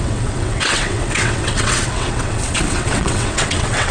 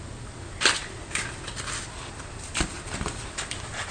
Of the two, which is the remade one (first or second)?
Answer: first